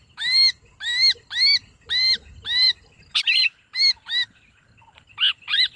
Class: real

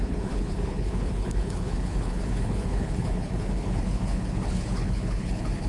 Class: fake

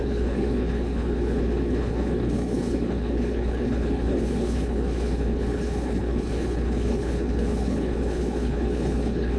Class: fake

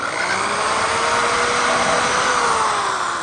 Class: real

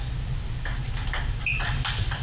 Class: real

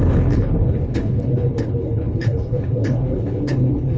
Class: fake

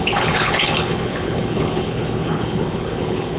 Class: fake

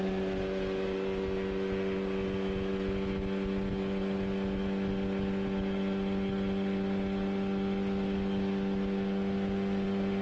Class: real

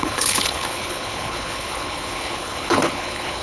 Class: fake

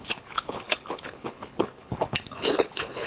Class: fake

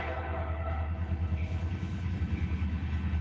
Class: fake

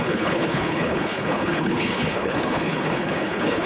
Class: fake